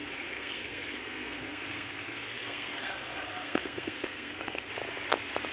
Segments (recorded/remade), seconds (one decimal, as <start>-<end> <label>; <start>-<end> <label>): 0.0-4.7 remade; 4.7-5.5 recorded